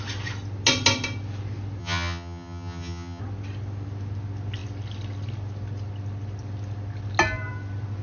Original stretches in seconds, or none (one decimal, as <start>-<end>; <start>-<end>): 0.0-1.8; 3.2-8.0